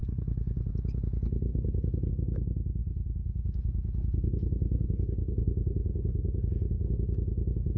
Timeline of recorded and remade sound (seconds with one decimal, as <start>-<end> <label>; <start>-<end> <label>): 0.0-0.7 remade; 0.7-1.5 recorded; 1.5-2.1 remade; 2.1-2.8 recorded; 2.8-6.5 remade; 6.5-7.8 recorded